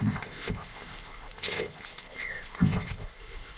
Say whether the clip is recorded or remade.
remade